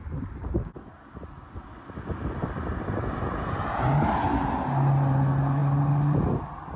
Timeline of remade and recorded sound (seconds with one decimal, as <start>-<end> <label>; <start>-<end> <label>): 0.0-6.8 recorded